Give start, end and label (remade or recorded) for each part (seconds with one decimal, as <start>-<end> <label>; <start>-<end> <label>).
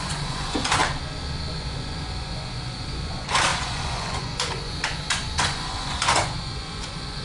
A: 0.0-0.8 remade; 0.8-1.5 recorded; 1.5-7.2 remade